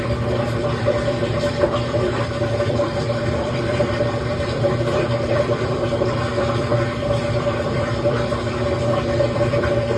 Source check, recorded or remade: remade